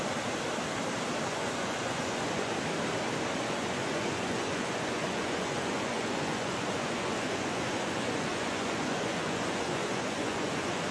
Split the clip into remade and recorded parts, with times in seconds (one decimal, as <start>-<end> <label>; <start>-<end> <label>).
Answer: 0.0-1.3 recorded; 1.3-2.5 remade; 2.5-3.4 recorded; 3.4-10.9 remade